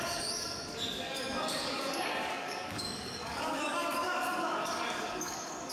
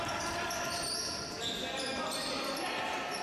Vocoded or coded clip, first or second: first